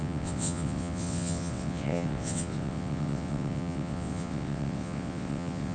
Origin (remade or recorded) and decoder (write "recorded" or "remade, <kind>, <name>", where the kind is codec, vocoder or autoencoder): remade, vocoder, WaveNeXt